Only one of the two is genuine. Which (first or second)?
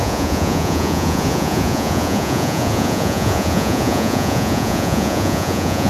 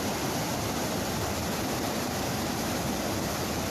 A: second